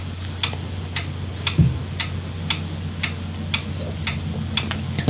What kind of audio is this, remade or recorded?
recorded